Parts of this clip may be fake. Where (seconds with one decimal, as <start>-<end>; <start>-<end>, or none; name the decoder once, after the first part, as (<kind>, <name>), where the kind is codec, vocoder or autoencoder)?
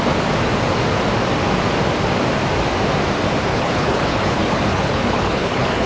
3.5-5.9 (codec, HILCodec)